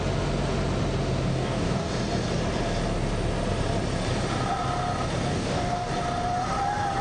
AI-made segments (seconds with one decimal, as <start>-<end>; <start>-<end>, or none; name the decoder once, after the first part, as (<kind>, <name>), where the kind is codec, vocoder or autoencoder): 1.3-1.9 (codec, DAC); 5.3-5.9